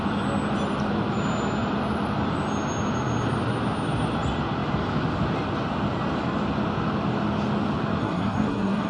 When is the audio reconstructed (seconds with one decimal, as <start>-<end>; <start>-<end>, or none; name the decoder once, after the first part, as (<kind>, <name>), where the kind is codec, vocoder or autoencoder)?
8.0-8.9 (codec, SNAC)